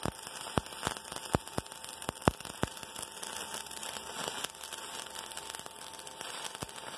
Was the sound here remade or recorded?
recorded